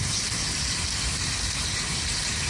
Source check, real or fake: fake